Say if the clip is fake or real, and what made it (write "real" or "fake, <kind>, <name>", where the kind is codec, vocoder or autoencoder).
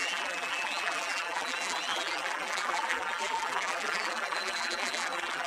fake, vocoder, BigVGAN v2